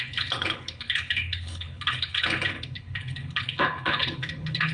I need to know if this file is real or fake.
fake